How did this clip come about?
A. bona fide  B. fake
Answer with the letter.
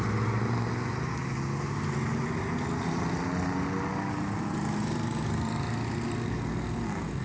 A